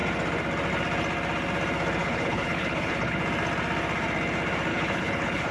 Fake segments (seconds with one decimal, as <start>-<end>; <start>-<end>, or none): 2.0-3.2; 4.7-5.5